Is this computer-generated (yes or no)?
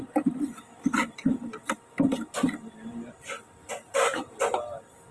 yes